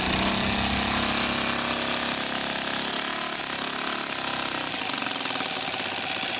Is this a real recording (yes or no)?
yes